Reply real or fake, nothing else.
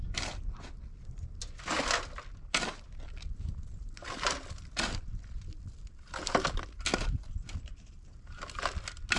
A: real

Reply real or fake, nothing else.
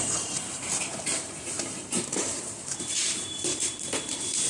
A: fake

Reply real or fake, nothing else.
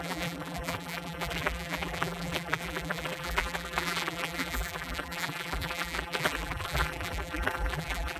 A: fake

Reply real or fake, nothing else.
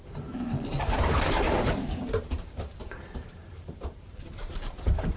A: fake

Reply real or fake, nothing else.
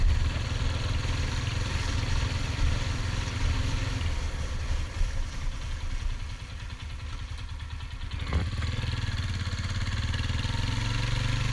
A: real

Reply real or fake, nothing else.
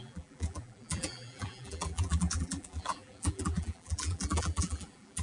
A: fake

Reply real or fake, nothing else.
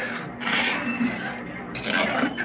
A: fake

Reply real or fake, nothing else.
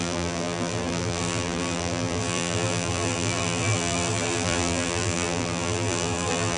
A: fake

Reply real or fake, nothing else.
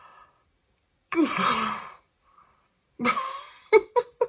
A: real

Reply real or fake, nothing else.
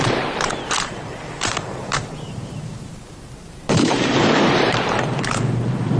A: fake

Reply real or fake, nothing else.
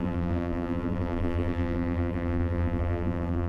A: fake